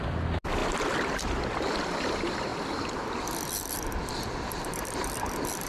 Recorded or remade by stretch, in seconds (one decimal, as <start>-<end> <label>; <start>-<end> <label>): 0.0-0.6 recorded; 0.6-1.9 remade; 1.9-2.5 recorded; 2.5-5.7 remade